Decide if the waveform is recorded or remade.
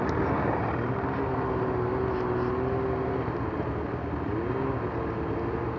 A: recorded